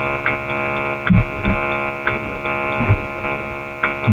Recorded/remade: recorded